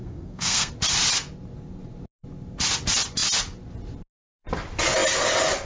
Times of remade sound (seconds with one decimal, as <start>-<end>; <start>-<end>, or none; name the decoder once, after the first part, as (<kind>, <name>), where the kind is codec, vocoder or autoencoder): 0.0-0.7 (codec, SNAC)